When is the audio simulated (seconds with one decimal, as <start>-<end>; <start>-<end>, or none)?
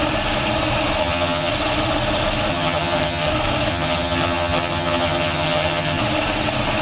1.0-1.5; 2.5-3.3; 3.7-6.0